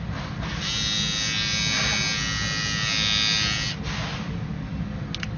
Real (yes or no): yes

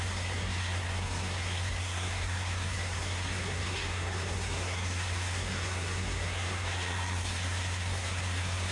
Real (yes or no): no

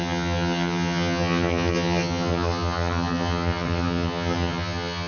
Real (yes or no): no